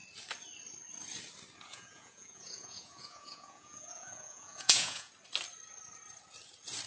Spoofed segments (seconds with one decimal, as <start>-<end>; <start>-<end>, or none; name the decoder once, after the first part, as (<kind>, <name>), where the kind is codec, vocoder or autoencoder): 1.7-5.1 (vocoder, Vocos)